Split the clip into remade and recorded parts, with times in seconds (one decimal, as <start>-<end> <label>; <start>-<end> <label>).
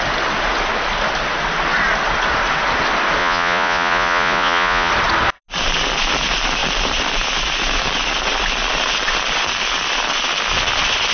0.0-3.2 recorded; 3.2-4.9 remade; 4.9-11.1 recorded